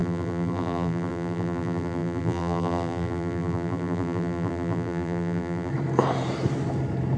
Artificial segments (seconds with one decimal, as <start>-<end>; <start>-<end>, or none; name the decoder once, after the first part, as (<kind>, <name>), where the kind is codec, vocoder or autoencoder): 0.0-5.7 (vocoder, BigVGAN v2)